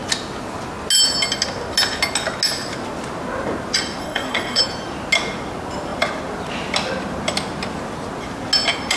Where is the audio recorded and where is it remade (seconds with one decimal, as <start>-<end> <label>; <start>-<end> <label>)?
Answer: 0.0-4.0 recorded; 4.0-4.6 remade; 4.6-9.0 recorded